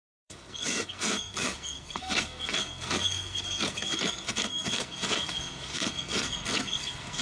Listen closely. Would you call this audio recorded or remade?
remade